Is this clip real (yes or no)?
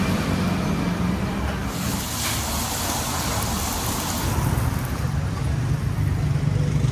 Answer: yes